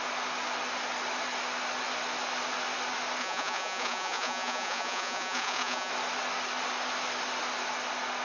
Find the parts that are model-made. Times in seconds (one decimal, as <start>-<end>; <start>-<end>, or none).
3.2-5.9